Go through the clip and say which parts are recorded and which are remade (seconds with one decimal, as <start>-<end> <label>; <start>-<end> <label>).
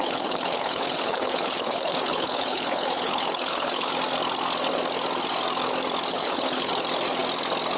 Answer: 0.0-3.9 remade; 3.9-6.1 recorded; 6.1-6.7 remade; 6.7-7.8 recorded